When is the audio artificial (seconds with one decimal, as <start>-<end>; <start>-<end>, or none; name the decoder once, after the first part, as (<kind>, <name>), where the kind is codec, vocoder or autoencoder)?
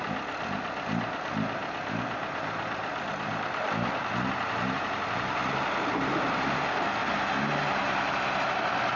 7.0-8.6 (vocoder, BigVGAN v2)